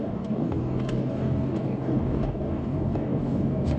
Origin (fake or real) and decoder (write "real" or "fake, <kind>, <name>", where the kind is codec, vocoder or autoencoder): fake, codec, DAC